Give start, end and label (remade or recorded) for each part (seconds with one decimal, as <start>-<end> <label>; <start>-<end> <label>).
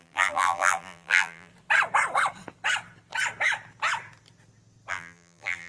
0.0-1.5 remade; 1.5-4.9 recorded; 4.9-5.7 remade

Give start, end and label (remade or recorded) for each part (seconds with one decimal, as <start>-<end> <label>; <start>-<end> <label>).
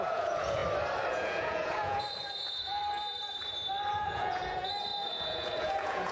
0.0-0.6 remade; 0.6-1.1 recorded; 1.1-2.8 remade; 2.8-3.9 recorded; 3.9-6.1 remade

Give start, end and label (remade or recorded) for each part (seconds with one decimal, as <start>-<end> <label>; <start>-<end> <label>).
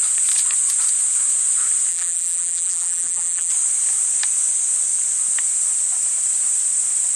0.0-1.9 recorded; 1.9-3.5 remade; 3.5-7.2 recorded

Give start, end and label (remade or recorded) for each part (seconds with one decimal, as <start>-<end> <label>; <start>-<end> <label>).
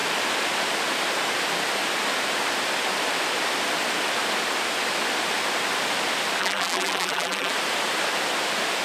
0.0-6.4 recorded; 6.4-7.5 remade; 7.5-8.8 recorded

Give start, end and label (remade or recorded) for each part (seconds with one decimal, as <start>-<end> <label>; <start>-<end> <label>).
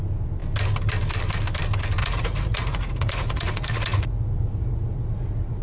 0.0-2.0 recorded; 2.0-5.6 remade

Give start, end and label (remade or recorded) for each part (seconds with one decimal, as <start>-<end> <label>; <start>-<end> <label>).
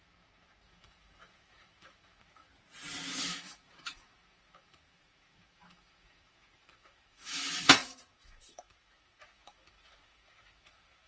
0.0-2.5 remade; 2.5-3.2 recorded; 3.2-11.1 remade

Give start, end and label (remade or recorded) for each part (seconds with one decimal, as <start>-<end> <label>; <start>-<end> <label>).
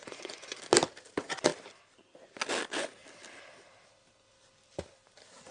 0.0-0.6 remade; 0.6-5.5 recorded